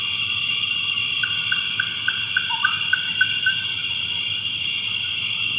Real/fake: real